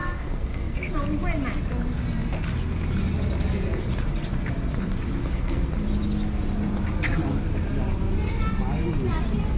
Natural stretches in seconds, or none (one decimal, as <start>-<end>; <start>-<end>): 0.9-5.2; 5.7-9.6